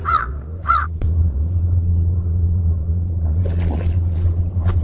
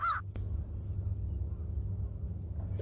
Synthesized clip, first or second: first